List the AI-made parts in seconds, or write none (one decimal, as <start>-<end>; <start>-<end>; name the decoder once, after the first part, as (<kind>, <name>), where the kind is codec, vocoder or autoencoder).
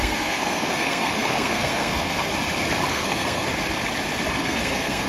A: 0.0-2.3 (codec, SNAC); 2.9-3.5; 4.3-5.1